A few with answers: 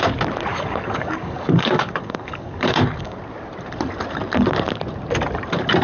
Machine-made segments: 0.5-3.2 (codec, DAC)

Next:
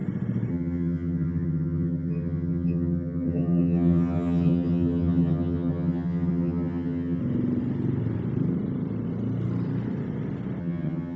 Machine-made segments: 0.5-7.2 (vocoder, HiFi-GAN); 10.6-11.2